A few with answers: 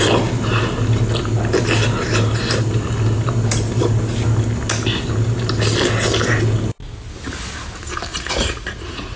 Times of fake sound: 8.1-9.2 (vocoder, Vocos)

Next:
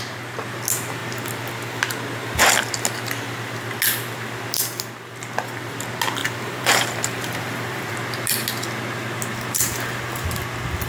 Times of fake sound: 6.2-7.9 (vocoder, BigVGAN v2); 9.6-10.3